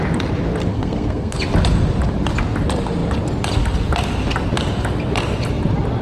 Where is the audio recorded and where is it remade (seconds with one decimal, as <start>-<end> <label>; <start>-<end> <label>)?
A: 0.0-0.7 recorded; 0.7-1.4 remade; 1.4-6.0 recorded